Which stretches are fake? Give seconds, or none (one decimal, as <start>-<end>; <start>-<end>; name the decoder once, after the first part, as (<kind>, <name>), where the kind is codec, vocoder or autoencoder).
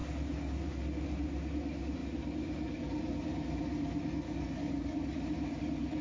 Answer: none